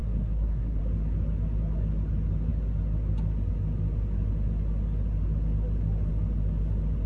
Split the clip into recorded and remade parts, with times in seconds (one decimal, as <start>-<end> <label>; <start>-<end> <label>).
0.0-0.8 remade; 0.8-7.1 recorded